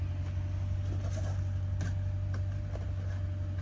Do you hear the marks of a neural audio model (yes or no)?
no